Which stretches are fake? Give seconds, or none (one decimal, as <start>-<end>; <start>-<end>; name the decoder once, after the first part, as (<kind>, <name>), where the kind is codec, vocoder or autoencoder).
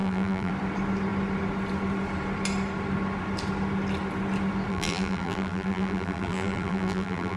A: 0.0-0.5 (vocoder, BigVGAN v2); 4.7-7.4